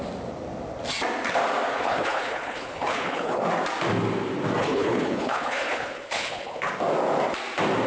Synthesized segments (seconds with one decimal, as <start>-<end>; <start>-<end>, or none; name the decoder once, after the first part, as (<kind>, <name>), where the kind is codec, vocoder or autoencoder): 1.7-3.4 (codec, HILCodec); 4.6-6.7